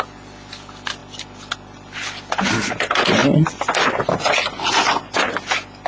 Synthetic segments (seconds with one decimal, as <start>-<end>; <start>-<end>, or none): none